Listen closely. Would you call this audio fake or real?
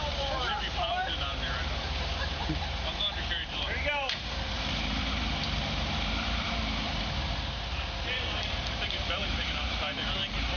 fake